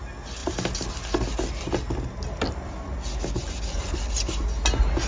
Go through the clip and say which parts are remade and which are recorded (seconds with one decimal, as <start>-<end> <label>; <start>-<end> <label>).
0.0-5.1 recorded